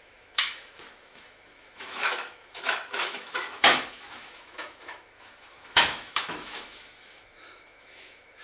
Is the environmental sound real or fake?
fake